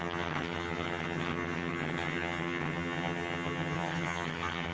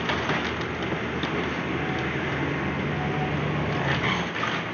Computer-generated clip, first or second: first